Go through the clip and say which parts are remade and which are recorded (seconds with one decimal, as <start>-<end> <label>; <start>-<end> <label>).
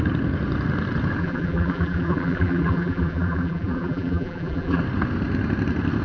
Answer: 0.0-1.2 recorded; 1.2-4.8 remade; 4.8-6.0 recorded